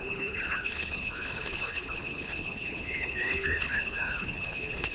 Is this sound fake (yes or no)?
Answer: yes